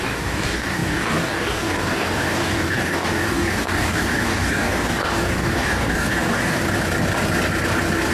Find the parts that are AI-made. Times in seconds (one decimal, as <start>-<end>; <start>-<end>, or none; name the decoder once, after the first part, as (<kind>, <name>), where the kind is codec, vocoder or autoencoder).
0.0-6.6 (codec, DAC)